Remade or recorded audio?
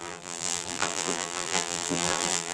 remade